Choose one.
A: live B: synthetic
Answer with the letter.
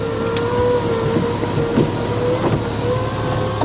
A